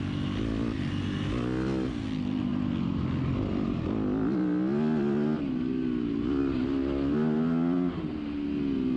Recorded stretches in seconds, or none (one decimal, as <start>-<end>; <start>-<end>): 0.0-9.0